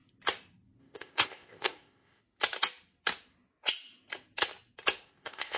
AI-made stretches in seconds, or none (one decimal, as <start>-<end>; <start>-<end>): 0.8-2.2; 5.0-5.6